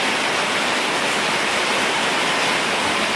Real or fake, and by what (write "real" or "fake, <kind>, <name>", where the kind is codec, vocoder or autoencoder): real